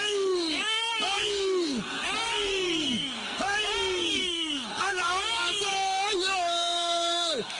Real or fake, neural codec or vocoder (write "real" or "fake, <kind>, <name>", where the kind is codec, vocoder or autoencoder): fake, codec, SNAC